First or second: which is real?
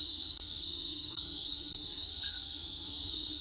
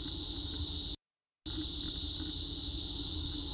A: second